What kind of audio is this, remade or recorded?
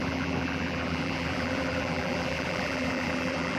remade